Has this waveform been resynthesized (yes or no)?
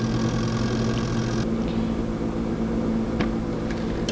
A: no